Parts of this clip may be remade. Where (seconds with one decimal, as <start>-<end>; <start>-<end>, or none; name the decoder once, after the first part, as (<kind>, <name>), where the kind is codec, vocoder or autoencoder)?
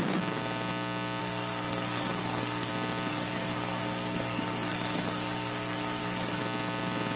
1.2-2.7 (codec, SNAC); 3.1-6.4